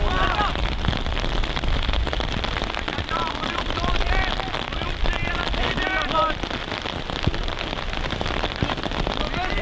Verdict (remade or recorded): remade